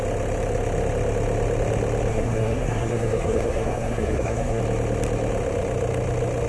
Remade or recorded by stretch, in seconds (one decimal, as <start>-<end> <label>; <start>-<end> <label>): 0.0-2.1 recorded; 2.1-4.6 remade; 4.6-6.5 recorded